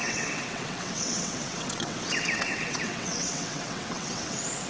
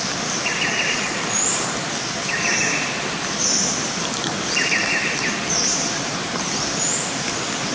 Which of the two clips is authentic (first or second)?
second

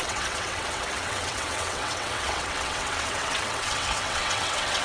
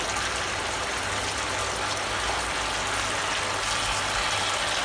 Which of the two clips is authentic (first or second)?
second